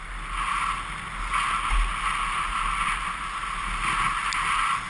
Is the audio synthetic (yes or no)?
no